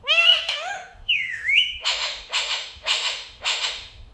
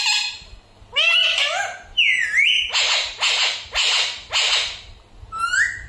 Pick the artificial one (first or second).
first